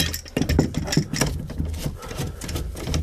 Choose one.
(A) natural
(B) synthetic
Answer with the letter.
A